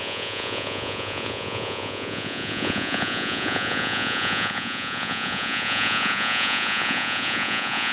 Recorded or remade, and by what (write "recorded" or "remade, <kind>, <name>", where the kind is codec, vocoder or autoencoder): remade, vocoder, Vocos